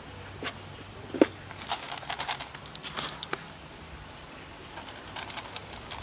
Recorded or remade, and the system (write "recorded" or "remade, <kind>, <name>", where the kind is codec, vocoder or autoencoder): recorded